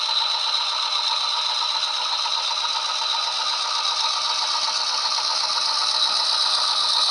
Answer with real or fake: real